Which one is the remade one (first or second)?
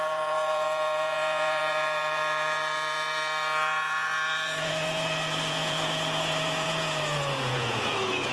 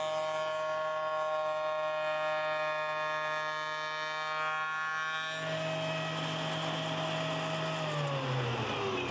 first